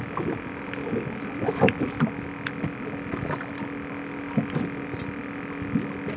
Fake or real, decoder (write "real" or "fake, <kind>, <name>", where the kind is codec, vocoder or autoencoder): real